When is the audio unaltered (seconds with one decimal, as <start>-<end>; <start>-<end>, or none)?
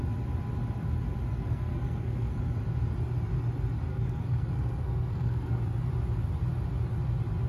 0.0-1.3; 2.4-3.9; 5.6-7.5